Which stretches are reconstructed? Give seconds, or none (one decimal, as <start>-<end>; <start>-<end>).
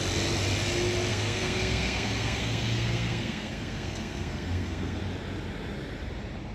1.1-5.0